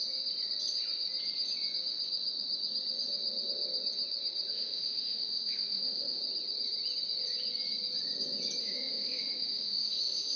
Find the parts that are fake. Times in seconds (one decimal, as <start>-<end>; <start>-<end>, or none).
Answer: 4.5-6.2; 8.6-10.4